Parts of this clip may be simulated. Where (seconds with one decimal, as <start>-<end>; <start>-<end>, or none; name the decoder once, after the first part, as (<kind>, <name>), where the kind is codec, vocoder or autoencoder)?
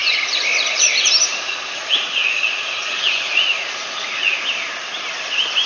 1.3-4.4 (vocoder, Vocos)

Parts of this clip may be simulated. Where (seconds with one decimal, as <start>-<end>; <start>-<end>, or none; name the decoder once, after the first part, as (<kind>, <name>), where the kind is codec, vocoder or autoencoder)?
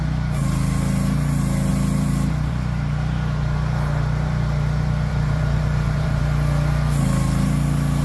1.7-2.5 (vocoder, BigVGAN v2); 5.1-6.2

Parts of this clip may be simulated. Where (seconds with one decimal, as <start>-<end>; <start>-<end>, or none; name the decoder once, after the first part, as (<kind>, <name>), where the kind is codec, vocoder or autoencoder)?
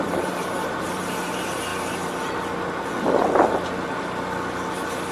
0.0-1.7 (vocoder, BigVGAN v2); 4.0-5.1